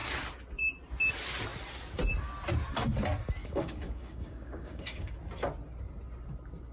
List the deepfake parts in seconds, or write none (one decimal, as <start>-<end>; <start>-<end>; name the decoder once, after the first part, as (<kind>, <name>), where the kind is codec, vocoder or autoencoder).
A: 3.4-5.1 (codec, DAC)